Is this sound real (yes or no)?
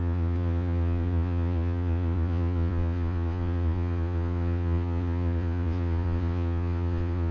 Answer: no